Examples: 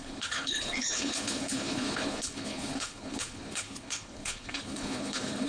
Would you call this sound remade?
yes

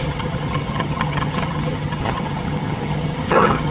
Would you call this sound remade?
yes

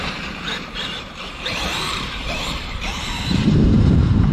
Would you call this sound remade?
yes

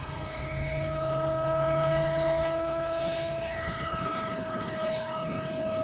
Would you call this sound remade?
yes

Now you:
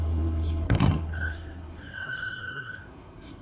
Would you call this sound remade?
yes